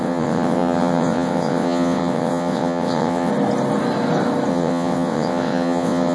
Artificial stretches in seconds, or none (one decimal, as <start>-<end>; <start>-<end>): 0.0-3.3; 4.5-6.1